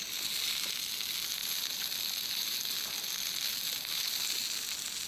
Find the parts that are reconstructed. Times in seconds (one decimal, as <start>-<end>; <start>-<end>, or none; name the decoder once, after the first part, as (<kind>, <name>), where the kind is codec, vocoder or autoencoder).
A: none